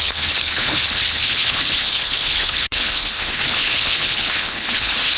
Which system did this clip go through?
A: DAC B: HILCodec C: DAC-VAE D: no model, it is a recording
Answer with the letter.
B